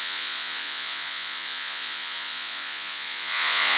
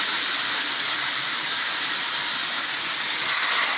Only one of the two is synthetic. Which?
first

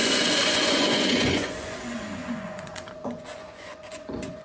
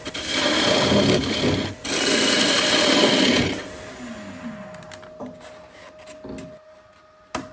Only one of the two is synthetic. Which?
first